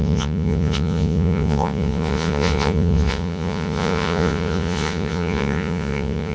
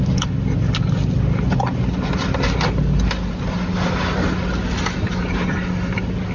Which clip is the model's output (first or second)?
first